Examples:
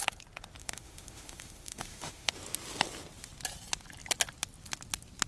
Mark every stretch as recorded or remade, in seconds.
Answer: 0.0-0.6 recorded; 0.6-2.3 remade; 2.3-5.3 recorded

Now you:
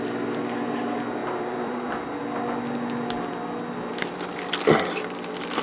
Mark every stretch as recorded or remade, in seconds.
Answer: 0.0-1.2 recorded; 1.2-2.2 remade; 2.2-5.6 recorded

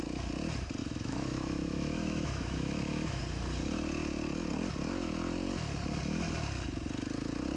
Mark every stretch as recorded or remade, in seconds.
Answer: 0.0-0.8 recorded; 0.8-3.2 remade; 3.2-7.6 recorded

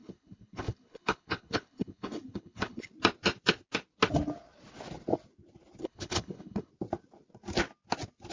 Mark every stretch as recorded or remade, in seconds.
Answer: 0.0-2.9 remade; 2.9-5.8 recorded; 5.8-6.7 remade; 6.7-8.3 recorded

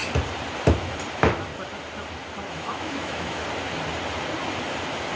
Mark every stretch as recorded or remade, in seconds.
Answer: 0.0-1.1 recorded; 1.1-1.5 remade; 1.5-2.5 recorded; 2.5-3.4 remade; 3.4-5.2 recorded